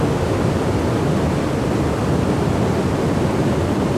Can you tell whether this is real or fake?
real